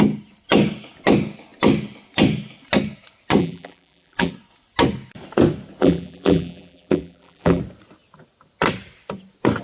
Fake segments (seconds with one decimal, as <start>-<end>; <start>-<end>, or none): 3.4-4.3; 5.8-7.6